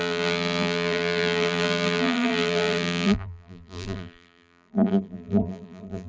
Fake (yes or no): yes